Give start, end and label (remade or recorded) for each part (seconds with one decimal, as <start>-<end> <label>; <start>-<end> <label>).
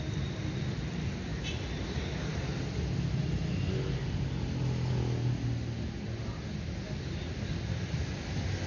0.0-8.7 recorded